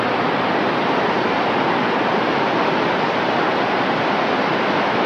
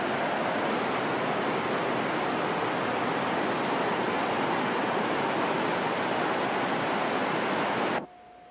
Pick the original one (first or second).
second